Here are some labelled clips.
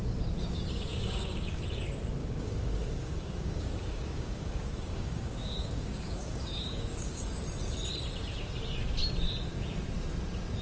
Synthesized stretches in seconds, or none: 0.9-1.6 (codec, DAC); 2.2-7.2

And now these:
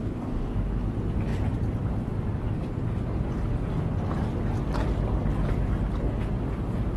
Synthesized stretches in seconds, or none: 0.0-0.5 (codec, DAC)

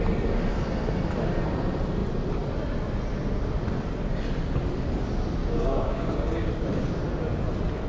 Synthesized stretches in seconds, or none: 5.4-6.5 (codec, DAC)

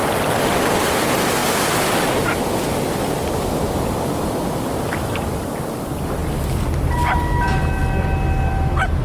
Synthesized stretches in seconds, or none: none